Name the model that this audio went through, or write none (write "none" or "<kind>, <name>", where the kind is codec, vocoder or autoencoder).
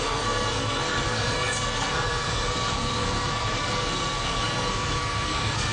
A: codec, SNAC